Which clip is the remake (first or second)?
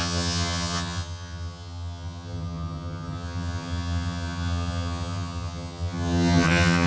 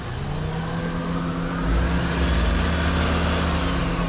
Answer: first